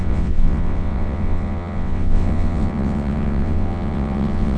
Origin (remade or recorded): remade